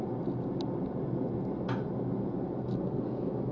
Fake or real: real